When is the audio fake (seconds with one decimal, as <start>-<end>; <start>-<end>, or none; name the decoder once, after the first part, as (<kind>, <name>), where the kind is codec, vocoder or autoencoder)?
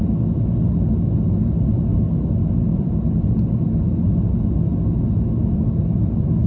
1.9-3.4 (vocoder, BigVGAN v2)